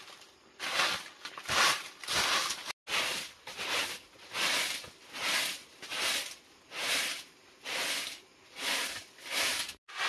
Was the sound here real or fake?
real